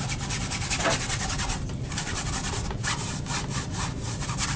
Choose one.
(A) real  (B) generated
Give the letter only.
A